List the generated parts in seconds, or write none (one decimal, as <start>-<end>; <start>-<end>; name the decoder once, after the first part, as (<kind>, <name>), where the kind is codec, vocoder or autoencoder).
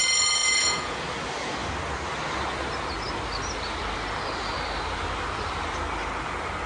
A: 0.4-1.0 (vocoder, Vocos)